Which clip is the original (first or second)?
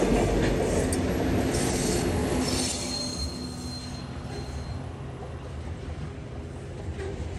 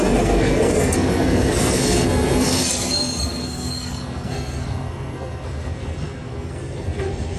first